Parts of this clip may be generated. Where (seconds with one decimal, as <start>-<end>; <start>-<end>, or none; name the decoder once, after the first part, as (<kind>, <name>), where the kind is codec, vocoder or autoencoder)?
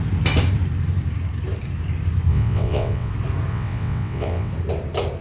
2.3-3.1 (vocoder, WaveNeXt); 3.5-4.5